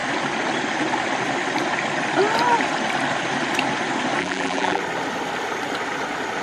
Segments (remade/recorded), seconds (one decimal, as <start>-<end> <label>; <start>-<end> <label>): 0.0-4.2 recorded; 4.2-4.8 remade; 4.8-6.4 recorded

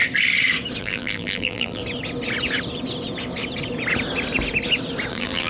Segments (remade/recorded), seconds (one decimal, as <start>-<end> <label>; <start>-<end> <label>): 0.0-0.8 recorded; 0.8-1.8 remade; 1.8-5.1 recorded; 5.1-5.5 remade

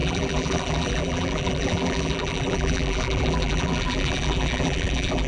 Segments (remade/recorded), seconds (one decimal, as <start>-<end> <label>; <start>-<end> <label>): 0.0-5.3 remade

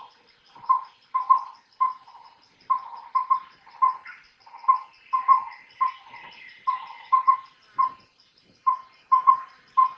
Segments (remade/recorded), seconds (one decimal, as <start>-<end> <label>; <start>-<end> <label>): 0.0-1.9 remade; 1.9-4.4 recorded; 4.4-5.3 remade; 5.3-6.3 recorded; 6.3-10.0 remade

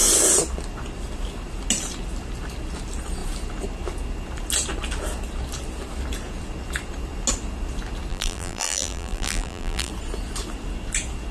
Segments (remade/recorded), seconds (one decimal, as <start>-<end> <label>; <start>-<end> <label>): 0.0-8.1 recorded; 8.1-9.9 remade; 9.9-11.3 recorded

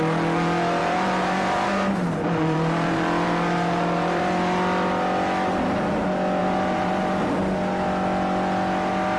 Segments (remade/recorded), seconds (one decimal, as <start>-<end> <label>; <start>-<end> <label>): 0.0-0.8 recorded; 0.8-4.3 remade; 4.3-6.4 recorded; 6.4-7.3 remade; 7.3-9.2 recorded

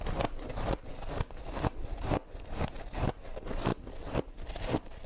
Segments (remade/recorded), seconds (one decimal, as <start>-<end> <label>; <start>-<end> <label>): 0.0-5.1 recorded